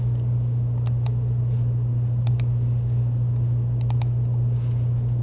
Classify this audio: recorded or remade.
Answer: recorded